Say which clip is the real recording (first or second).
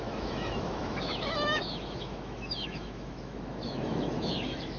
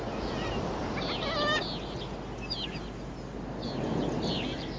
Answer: second